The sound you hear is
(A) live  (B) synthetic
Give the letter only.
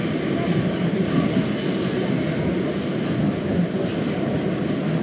A